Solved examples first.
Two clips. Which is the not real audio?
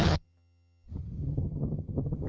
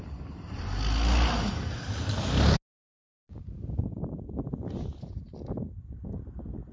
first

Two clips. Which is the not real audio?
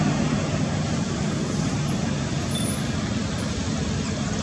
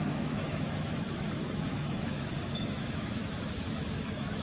second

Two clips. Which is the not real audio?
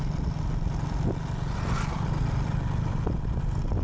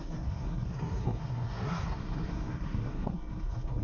second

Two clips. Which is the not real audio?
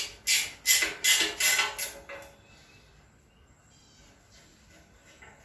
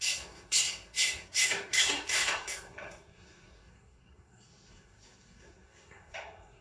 second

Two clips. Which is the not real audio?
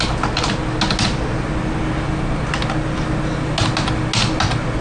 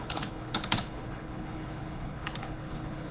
second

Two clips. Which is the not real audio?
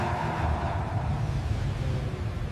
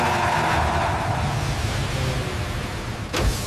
first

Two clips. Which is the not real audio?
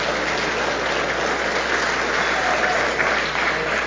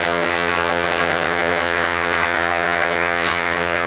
second